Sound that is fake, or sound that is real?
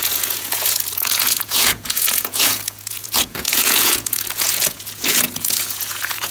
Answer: fake